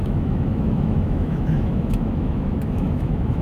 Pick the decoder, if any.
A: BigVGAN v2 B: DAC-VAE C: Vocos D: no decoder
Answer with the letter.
B